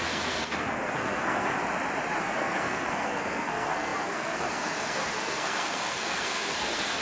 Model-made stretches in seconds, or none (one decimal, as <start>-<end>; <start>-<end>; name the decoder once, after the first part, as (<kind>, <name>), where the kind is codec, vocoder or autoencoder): 0.0-1.6 (codec, SNAC); 2.2-7.0